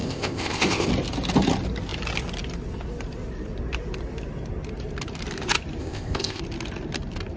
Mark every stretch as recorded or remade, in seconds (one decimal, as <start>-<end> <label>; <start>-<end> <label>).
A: 0.0-0.9 remade; 0.9-5.8 recorded; 5.8-6.4 remade; 6.4-7.4 recorded